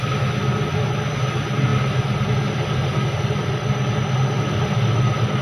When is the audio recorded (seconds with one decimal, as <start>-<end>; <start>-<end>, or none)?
0.0-5.4